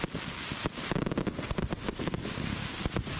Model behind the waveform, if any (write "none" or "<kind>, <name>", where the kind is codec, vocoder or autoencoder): none